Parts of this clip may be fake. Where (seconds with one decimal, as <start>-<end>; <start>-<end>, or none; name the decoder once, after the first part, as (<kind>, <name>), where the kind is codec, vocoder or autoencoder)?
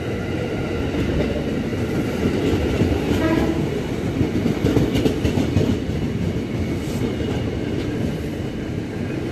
none